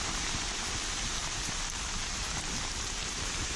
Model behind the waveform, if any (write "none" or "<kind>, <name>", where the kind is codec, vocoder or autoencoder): vocoder, BigVGAN v2